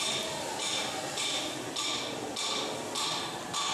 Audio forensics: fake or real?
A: real